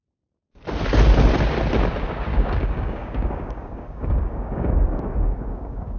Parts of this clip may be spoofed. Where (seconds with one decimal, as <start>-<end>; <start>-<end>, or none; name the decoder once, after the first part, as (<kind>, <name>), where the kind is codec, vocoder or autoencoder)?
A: 2.3-6.0 (codec, DAC)